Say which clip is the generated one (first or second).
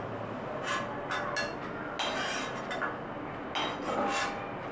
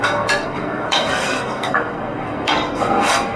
second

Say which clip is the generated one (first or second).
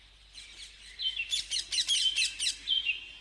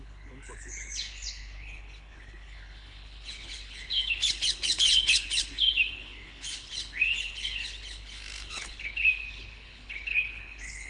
second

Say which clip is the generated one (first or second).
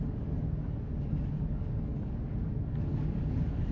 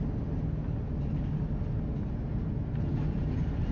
first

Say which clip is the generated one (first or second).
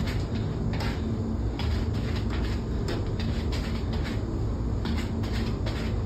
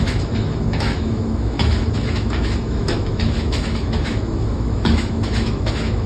second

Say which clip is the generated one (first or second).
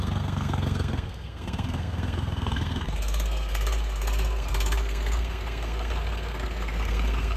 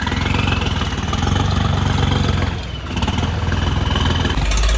first